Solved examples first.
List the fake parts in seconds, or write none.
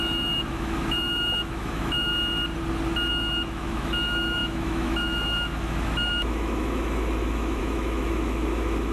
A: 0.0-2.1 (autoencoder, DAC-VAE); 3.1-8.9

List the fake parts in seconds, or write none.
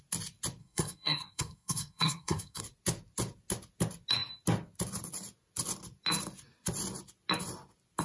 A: 0.6-2.6 (codec, SNAC)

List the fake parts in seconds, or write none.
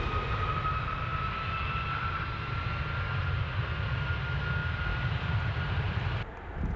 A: 4.6-6.3 (vocoder, BigVGAN v2)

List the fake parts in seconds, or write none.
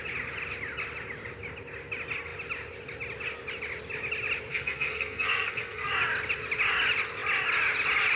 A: 4.5-5.9 (codec, SNAC)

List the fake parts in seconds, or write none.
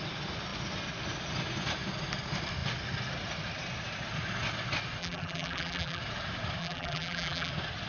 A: 5.0-6.0 (vocoder, BigVGAN v2); 6.6-7.5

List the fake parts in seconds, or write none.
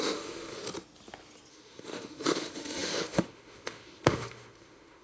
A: 0.0-0.6 (autoencoder, DAC-VAE); 1.5-5.0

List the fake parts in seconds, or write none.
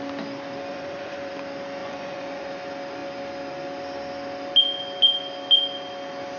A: 0.7-1.3 (vocoder, Vocos); 1.8-2.5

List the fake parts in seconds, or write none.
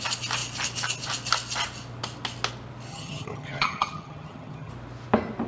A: 2.9-4.7 (vocoder, HiFi-GAN)